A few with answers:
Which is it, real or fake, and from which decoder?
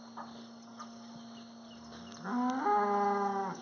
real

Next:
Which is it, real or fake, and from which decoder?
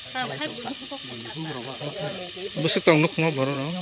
fake, vocoder, WaveNeXt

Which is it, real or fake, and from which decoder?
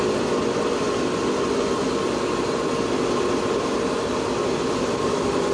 real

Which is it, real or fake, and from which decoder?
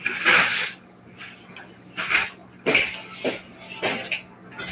real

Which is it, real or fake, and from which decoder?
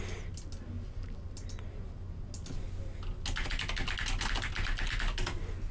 real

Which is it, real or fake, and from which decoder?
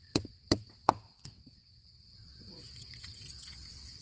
fake, vocoder, WaveNeXt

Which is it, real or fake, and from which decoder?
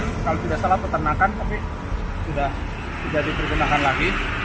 real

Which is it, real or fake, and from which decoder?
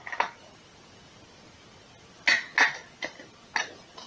real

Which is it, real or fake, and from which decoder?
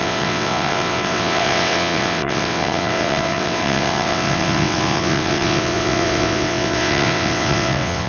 fake, vocoder, WaveNeXt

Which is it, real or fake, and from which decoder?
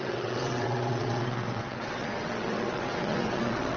fake, vocoder, WaveNeXt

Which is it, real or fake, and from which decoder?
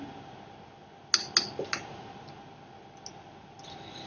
real